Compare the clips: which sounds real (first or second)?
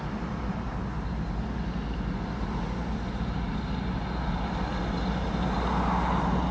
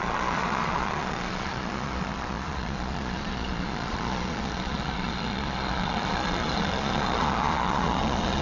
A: first